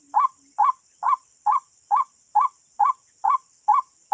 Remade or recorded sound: recorded